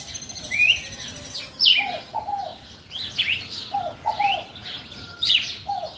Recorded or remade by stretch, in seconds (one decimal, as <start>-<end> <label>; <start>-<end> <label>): 0.0-6.0 recorded